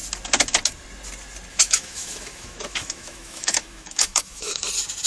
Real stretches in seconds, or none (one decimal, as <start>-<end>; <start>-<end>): 0.0-1.5; 4.6-5.1